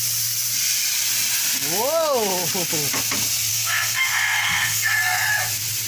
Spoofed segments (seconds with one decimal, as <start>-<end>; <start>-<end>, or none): 3.5-5.3